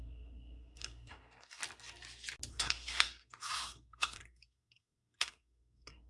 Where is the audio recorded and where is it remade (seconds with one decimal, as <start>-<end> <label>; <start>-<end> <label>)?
0.0-1.6 remade; 1.6-2.5 recorded; 2.5-6.1 remade